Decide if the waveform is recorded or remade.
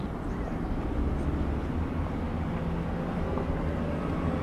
recorded